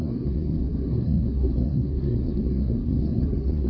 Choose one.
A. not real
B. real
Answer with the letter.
A